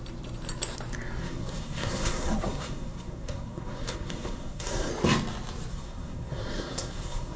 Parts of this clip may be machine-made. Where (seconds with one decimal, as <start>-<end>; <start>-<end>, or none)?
1.2-4.9; 5.7-7.4